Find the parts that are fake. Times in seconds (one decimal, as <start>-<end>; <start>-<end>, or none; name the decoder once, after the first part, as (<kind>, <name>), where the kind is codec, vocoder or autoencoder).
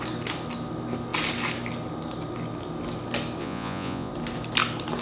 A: 3.4-4.1 (vocoder, Vocos)